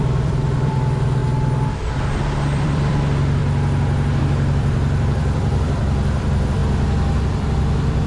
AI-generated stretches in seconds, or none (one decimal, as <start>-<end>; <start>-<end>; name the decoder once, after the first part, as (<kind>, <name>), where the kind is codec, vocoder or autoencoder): 0.0-1.2 (vocoder, BigVGAN v2); 1.9-3.4; 4.2-6.6; 7.2-8.1